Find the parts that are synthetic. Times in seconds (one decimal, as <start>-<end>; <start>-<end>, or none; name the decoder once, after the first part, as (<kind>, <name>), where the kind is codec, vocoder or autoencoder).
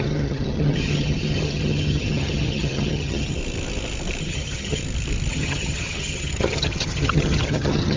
0.0-3.4 (vocoder, HiFi-GAN); 4.2-4.8; 5.3-8.0